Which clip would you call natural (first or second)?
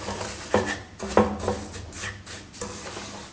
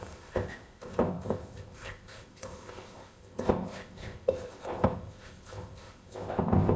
first